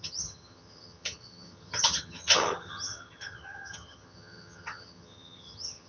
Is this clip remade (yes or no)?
yes